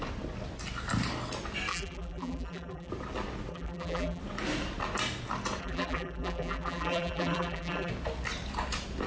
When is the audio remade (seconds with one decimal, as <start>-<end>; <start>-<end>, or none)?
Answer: 1.7-2.9; 3.5-4.2; 5.6-7.9